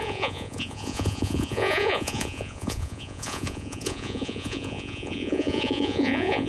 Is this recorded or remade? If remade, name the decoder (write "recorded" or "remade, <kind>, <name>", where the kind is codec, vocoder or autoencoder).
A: remade, vocoder, Vocos